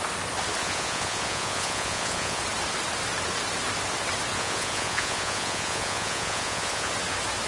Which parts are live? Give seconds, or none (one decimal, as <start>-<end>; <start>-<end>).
0.0-0.6; 2.4-4.3; 6.9-7.5